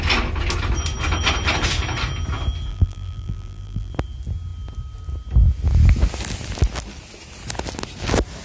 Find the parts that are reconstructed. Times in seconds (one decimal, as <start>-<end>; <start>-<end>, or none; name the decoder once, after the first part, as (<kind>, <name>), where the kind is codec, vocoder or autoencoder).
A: 2.7-3.9 (vocoder, BigVGAN v2)